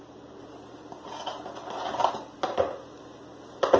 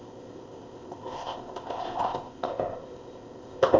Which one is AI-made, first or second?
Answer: second